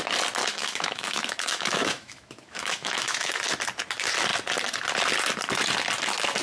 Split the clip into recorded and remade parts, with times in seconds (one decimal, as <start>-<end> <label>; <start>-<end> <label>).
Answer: 0.0-0.4 recorded; 0.4-3.4 remade; 3.4-6.4 recorded